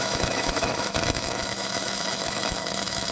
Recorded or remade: remade